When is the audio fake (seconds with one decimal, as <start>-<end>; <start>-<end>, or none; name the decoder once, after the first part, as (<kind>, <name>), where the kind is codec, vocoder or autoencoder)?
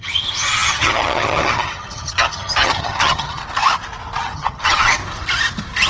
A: 0.0-3.4 (vocoder, HiFi-GAN); 4.2-5.0